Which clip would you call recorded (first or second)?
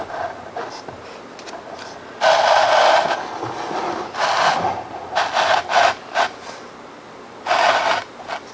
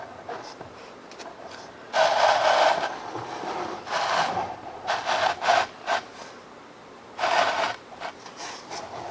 first